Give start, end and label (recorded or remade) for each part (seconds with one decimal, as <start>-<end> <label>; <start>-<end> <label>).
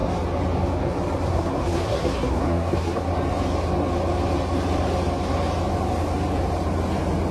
0.0-1.3 recorded; 1.3-3.1 remade; 3.1-7.3 recorded